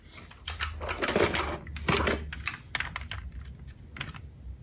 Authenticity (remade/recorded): recorded